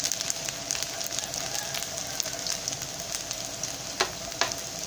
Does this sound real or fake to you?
real